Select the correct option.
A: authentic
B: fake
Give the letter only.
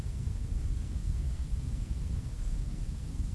B